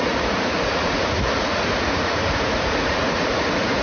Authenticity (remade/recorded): remade